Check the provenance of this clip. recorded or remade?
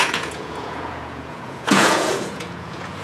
remade